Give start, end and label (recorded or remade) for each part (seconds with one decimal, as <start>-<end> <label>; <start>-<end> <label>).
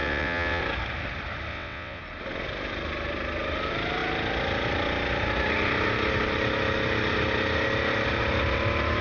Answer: 0.0-0.6 remade; 0.6-1.5 recorded; 1.5-2.0 remade; 2.0-9.0 recorded